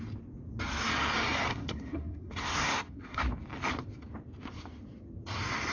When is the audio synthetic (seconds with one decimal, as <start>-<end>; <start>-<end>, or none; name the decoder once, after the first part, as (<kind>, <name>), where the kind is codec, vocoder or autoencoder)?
1.5-3.2 (codec, SNAC)